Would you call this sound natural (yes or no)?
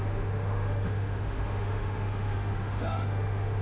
no